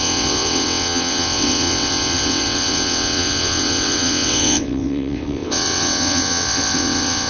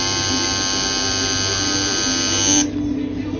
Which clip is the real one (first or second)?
second